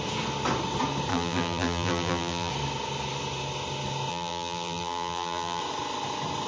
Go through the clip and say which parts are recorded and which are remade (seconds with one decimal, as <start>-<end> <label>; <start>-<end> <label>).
0.0-1.1 recorded; 1.1-2.5 remade; 2.5-4.1 recorded; 4.1-5.6 remade; 5.6-6.5 recorded